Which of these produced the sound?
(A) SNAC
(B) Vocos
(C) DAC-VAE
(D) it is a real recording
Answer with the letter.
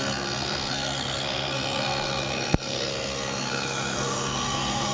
A